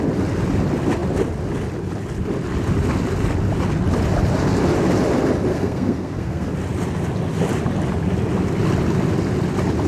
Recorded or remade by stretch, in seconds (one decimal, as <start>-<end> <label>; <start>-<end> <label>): 0.0-5.5 recorded; 5.5-6.5 remade; 6.5-9.9 recorded